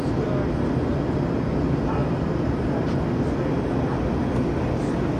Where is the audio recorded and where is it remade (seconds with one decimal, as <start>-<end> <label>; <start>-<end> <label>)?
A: 0.0-5.2 recorded